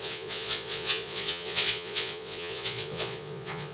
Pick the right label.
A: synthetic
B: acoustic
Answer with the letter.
A